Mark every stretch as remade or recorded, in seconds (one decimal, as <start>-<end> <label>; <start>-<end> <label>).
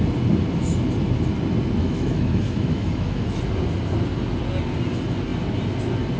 0.0-1.8 recorded; 1.8-3.4 remade; 3.4-6.2 recorded